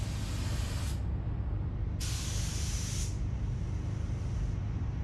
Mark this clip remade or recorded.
recorded